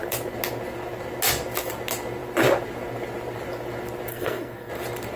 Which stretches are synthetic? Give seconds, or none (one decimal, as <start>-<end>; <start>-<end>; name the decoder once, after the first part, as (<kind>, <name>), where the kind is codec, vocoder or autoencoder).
4.1-4.7 (codec, SNAC)